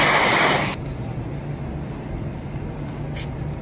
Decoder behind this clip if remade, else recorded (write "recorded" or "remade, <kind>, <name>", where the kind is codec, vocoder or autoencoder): recorded